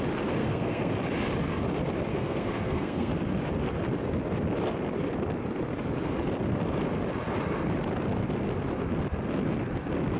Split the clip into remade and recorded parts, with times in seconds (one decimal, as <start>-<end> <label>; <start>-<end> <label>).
0.0-0.4 recorded; 0.4-0.9 remade; 0.9-2.1 recorded; 2.1-3.1 remade; 3.1-10.2 recorded